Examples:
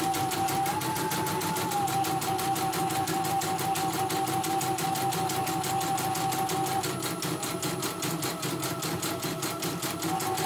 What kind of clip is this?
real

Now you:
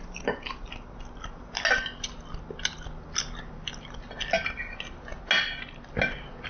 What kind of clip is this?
real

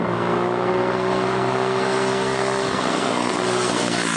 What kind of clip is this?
fake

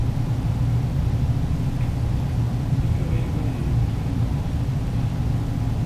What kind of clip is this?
real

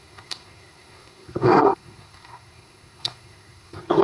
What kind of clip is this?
fake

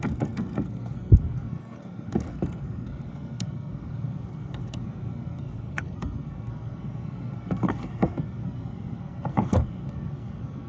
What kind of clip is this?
fake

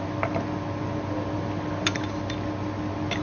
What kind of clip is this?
real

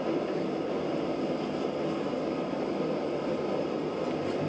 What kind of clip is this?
real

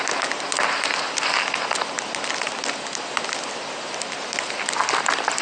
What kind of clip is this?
real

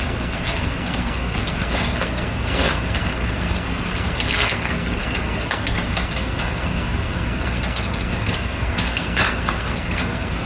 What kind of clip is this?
fake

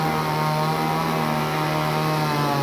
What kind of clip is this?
real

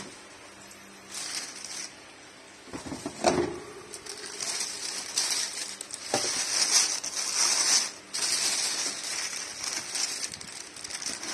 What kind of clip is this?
real